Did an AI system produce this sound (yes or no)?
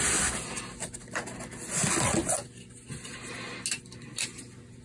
no